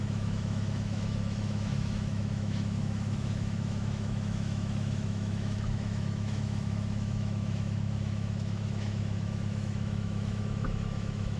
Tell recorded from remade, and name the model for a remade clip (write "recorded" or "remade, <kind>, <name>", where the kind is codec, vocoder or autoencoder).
remade, autoencoder, DAC-VAE